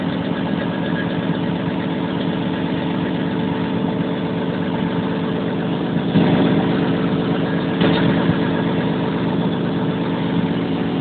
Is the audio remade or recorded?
recorded